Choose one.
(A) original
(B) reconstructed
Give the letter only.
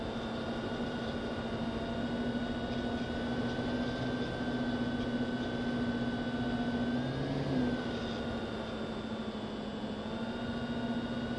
A